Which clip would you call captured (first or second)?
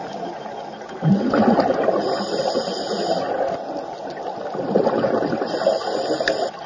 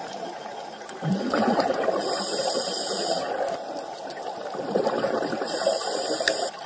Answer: first